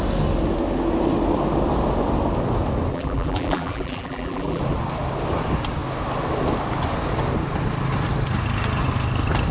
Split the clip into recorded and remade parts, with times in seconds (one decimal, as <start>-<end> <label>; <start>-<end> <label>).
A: 0.0-2.9 recorded; 2.9-4.6 remade; 4.6-9.5 recorded